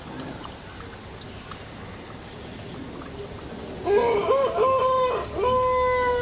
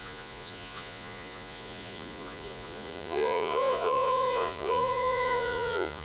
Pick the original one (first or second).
first